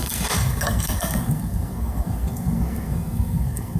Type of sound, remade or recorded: remade